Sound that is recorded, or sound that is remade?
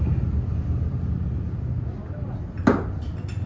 recorded